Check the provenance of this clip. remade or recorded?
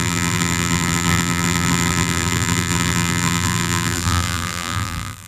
remade